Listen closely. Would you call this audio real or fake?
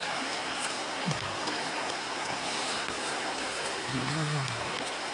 fake